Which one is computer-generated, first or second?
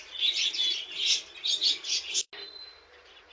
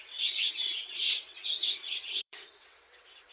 second